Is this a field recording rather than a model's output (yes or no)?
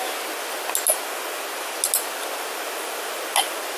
yes